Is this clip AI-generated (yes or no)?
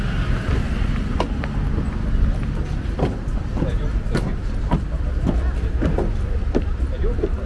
no